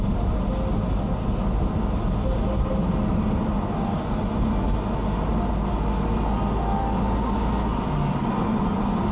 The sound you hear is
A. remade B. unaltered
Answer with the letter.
B